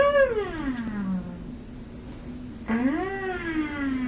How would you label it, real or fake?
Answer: real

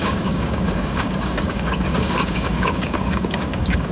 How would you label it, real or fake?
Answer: fake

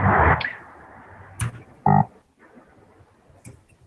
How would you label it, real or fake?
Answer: real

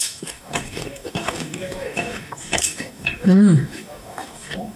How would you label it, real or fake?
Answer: fake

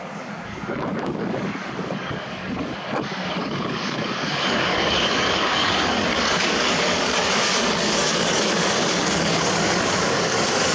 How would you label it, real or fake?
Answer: fake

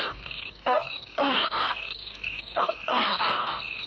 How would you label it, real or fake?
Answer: fake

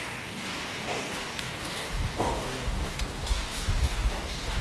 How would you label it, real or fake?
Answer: fake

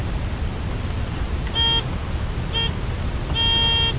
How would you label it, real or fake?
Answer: real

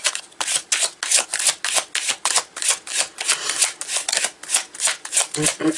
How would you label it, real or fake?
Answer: real